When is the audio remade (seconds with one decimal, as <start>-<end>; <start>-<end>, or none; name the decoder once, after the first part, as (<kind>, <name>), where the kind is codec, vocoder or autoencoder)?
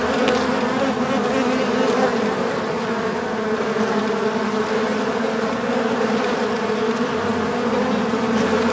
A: none